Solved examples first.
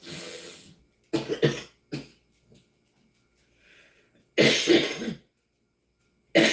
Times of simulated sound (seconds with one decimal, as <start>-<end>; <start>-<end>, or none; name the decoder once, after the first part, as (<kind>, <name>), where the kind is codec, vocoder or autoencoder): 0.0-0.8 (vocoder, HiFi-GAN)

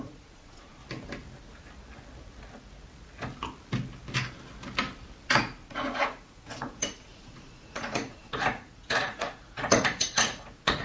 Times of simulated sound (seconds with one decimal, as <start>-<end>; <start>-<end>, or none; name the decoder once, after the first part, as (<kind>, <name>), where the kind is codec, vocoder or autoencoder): 0.0-0.8 (vocoder, Vocos); 5.3-10.8

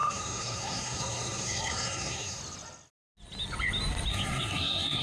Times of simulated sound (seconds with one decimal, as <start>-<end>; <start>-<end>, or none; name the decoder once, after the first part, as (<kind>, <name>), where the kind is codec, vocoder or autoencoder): 0.0-2.4 (codec, SNAC); 4.1-5.0

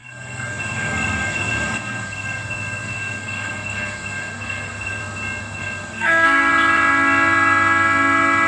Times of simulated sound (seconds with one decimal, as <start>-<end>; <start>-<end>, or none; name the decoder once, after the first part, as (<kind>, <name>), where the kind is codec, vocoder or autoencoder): 0.0-5.0 (codec, SNAC); 5.4-6.5

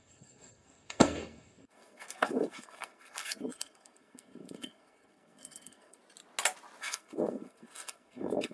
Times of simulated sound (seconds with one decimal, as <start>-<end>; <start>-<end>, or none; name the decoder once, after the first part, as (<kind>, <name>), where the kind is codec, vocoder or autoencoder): 0.0-6.0 (codec, SNAC); 6.8-8.5

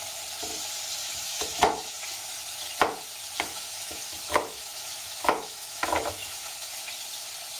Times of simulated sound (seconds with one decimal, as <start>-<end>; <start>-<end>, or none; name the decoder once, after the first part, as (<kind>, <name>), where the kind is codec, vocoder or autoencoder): 1.0-2.0 (autoencoder, DAC-VAE); 3.5-6.7